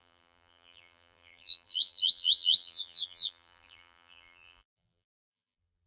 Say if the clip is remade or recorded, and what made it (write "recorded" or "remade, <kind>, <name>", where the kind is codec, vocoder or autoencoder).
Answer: remade, vocoder, BigVGAN v2